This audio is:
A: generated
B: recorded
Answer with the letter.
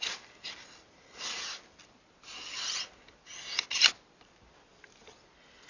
B